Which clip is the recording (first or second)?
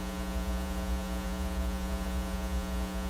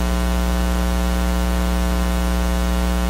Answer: second